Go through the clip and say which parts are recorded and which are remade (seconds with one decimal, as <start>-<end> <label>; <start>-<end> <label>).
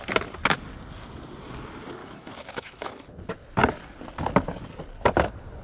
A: 0.0-2.0 recorded; 2.0-3.0 remade; 3.0-5.6 recorded